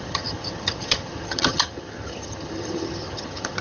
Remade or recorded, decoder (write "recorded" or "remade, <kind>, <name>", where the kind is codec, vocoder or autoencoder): remade, vocoder, HiFi-GAN